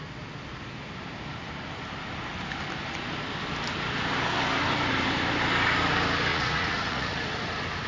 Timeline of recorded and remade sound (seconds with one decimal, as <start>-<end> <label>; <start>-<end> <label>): 0.0-6.3 recorded; 6.3-7.3 remade; 7.3-7.9 recorded

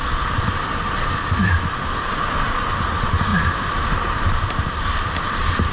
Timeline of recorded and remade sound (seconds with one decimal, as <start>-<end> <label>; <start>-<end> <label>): 0.0-5.7 recorded

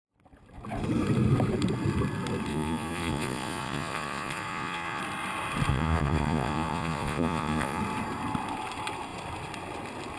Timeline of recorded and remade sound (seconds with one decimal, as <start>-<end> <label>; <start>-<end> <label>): 0.0-2.5 recorded; 2.5-5.0 remade; 5.0-5.7 recorded; 5.7-7.8 remade; 7.8-10.2 recorded

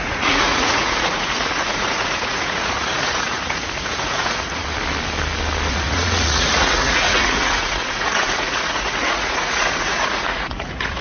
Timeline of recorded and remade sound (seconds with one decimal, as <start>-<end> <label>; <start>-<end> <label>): 0.0-4.6 remade; 4.6-5.7 recorded; 5.7-11.0 remade